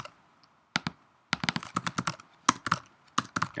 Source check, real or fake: real